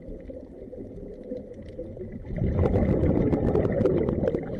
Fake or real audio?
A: real